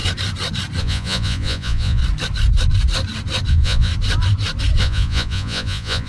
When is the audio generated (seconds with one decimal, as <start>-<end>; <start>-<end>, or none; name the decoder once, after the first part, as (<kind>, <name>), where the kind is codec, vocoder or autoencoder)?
0.8-2.0 (vocoder, Vocos); 3.5-3.9; 4.8-6.1